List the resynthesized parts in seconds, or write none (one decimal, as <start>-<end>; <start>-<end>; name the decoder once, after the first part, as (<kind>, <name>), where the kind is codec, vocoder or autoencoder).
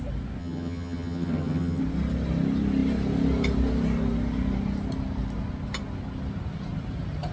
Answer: 0.4-1.8 (vocoder, HiFi-GAN)